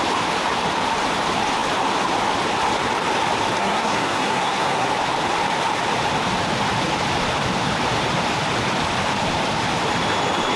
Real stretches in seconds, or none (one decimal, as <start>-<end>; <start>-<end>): 0.0-3.6; 4.9-10.6